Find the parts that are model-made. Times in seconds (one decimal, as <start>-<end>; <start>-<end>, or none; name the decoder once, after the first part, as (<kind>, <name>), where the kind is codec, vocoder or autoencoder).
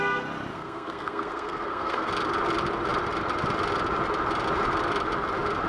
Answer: 0.5-2.1 (codec, SNAC)